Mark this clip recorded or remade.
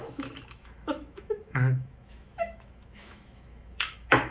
remade